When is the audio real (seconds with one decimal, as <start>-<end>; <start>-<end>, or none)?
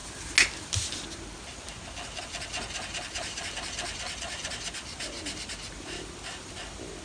0.0-7.0